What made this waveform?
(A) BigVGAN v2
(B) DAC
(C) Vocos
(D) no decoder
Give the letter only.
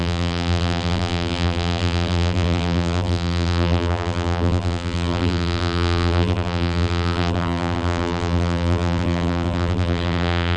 A